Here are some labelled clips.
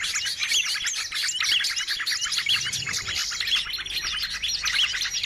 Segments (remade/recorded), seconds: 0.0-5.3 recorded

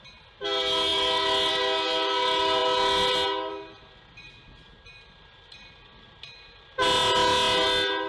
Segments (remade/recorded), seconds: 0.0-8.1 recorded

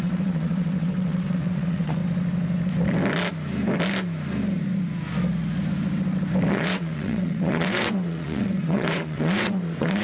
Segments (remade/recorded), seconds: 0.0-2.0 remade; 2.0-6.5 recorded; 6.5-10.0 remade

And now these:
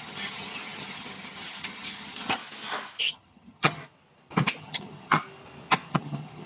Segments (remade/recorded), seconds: 0.0-2.4 remade; 2.4-3.1 recorded; 3.1-3.8 remade; 3.8-4.6 recorded; 4.6-5.2 remade; 5.2-5.9 recorded; 5.9-6.5 remade